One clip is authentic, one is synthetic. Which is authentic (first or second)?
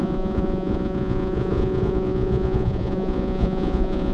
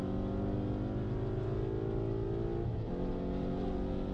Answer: second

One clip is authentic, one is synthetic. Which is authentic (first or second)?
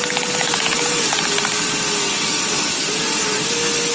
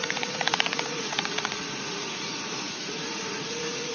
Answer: first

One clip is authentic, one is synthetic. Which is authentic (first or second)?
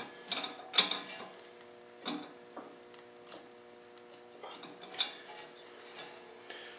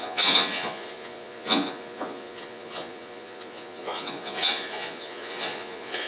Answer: first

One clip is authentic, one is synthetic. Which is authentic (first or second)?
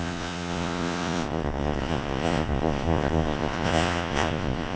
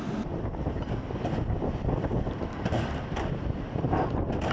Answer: second